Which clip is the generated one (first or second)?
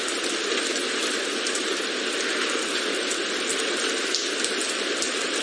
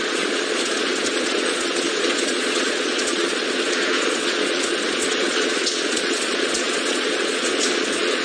second